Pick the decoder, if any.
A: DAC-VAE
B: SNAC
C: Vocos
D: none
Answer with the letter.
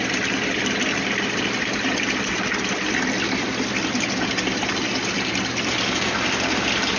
D